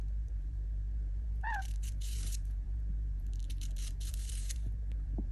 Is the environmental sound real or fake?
fake